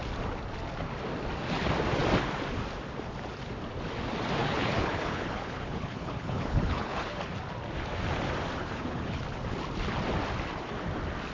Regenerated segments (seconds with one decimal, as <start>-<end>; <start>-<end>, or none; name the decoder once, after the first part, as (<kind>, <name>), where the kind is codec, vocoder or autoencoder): 4.4-7.2 (codec, HILCodec); 8.6-9.2